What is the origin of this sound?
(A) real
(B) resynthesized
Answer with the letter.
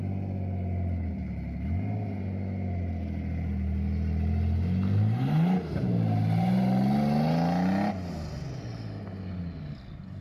A